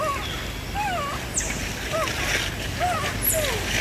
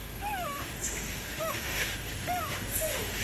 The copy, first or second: second